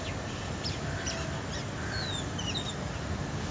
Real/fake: real